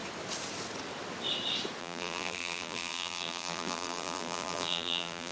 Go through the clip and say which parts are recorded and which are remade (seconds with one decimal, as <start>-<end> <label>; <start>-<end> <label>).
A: 0.0-1.8 recorded; 1.8-5.3 remade